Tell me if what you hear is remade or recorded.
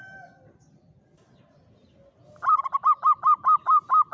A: recorded